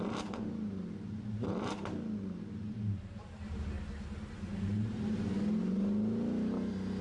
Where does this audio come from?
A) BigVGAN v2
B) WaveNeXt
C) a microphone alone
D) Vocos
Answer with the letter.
C